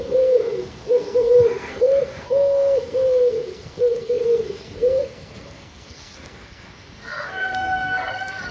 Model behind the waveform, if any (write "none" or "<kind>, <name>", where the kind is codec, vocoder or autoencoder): codec, SNAC